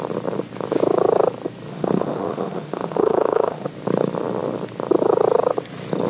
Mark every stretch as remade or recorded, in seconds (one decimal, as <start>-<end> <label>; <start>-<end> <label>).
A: 0.0-1.7 recorded; 1.7-3.7 remade; 3.7-6.1 recorded